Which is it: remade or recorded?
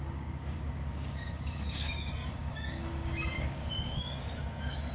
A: remade